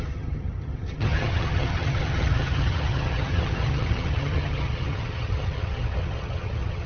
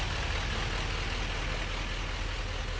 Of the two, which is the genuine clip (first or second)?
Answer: second